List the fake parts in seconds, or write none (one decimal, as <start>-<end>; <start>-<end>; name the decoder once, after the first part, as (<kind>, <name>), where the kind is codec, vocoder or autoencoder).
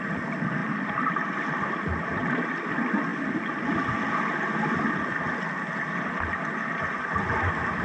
0.0-3.1 (vocoder, BigVGAN v2); 5.8-7.8